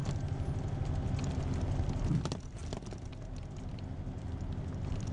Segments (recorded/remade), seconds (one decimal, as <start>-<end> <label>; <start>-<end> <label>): 0.0-5.1 recorded